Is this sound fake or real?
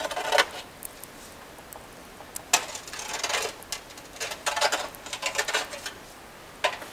real